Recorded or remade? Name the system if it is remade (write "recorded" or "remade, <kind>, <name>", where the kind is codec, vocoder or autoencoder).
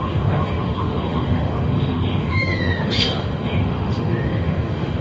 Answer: remade, autoencoder, DAC-VAE